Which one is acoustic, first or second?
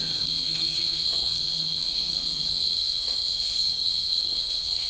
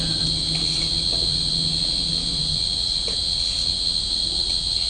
second